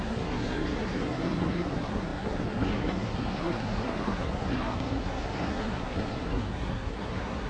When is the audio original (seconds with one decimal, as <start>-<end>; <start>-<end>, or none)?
none